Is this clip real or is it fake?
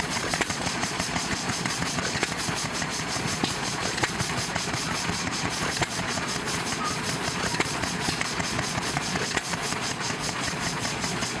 fake